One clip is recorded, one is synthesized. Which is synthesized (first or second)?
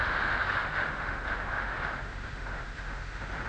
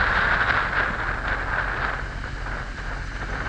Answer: first